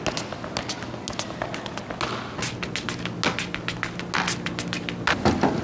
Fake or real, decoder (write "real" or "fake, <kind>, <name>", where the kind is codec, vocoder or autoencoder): real